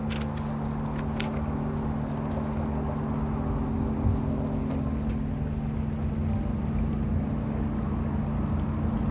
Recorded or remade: recorded